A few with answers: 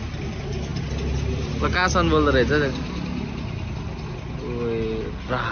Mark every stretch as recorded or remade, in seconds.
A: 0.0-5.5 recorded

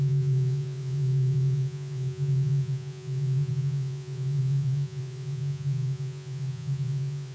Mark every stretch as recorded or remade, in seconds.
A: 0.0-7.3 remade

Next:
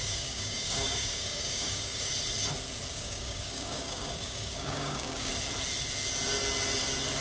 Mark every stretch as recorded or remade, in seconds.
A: 0.0-2.1 remade; 2.1-2.9 recorded; 2.9-5.3 remade; 5.3-7.2 recorded

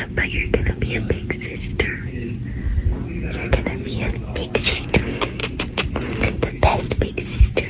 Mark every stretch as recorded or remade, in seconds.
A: 0.0-1.7 remade; 1.7-4.6 recorded; 4.6-5.4 remade; 5.4-6.1 recorded; 6.1-7.7 remade